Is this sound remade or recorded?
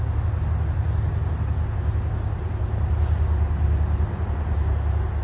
recorded